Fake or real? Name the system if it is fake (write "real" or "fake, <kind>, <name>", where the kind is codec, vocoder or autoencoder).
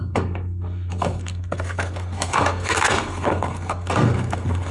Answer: fake, codec, SNAC